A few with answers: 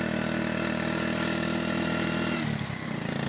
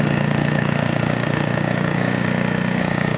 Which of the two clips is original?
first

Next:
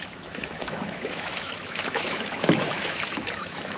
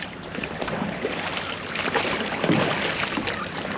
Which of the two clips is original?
second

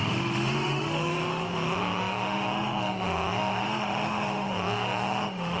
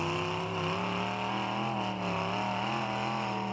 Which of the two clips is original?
second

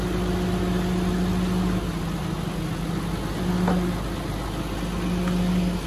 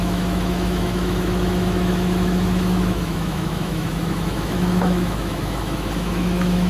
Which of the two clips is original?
first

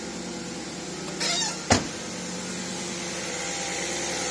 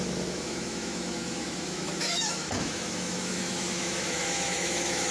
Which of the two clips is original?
first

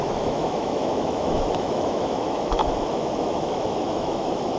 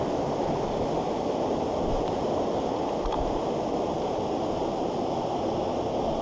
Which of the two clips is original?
second